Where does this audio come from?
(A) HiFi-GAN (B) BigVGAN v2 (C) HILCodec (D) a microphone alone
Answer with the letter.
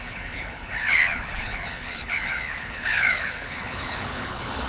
C